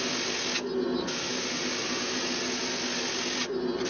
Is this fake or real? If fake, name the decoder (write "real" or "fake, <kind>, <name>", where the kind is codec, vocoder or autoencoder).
real